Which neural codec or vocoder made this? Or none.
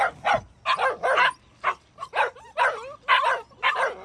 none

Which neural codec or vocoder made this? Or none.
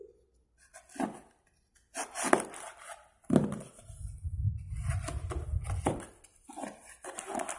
none